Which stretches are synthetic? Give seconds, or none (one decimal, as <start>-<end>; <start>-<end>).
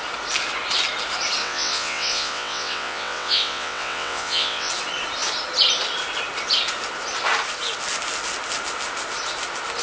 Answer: 1.4-4.7